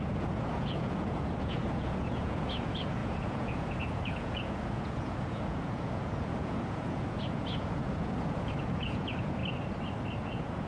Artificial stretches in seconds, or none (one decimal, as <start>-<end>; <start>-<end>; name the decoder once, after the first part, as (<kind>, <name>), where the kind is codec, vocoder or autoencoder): 0.0-9.4 (vocoder, Vocos); 10.2-10.7